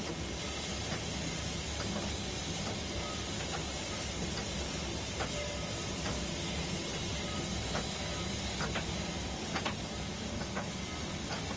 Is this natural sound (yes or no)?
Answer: yes